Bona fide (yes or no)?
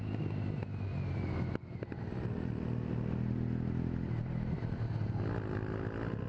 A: yes